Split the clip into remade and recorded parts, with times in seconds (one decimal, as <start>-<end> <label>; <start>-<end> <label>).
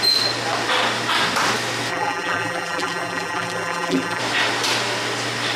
0.0-1.9 recorded; 1.9-4.2 remade; 4.2-5.6 recorded